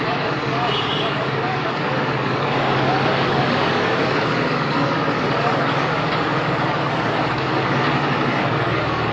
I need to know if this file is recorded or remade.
remade